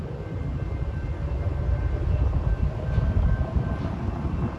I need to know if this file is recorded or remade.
recorded